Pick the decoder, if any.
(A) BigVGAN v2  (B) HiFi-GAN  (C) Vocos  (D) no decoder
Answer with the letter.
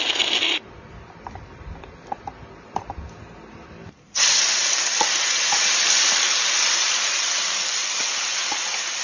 D